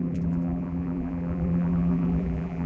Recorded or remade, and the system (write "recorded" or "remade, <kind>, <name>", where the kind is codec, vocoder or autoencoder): remade, vocoder, BigVGAN v2